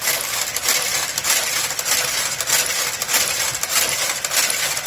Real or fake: fake